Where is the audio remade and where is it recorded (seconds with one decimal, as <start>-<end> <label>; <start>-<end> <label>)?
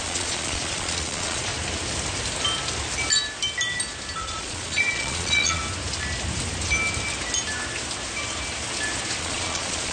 0.0-1.5 remade; 1.5-4.2 recorded; 4.2-5.6 remade; 5.6-9.2 recorded; 9.2-9.9 remade